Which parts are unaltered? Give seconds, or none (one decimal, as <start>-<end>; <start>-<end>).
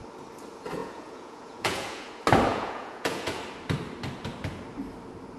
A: 0.0-0.8; 2.1-2.5; 3.4-5.4